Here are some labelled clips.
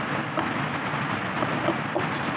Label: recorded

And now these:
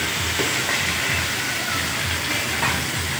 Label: recorded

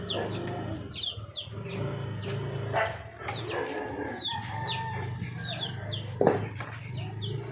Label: recorded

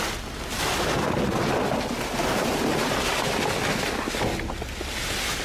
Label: recorded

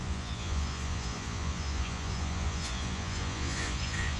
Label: remade